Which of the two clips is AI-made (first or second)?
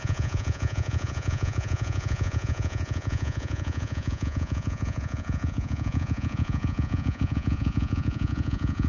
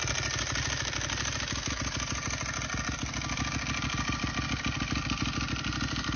first